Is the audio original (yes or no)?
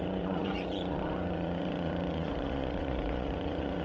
no